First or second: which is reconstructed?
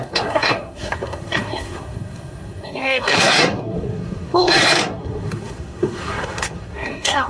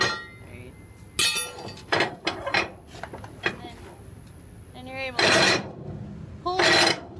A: first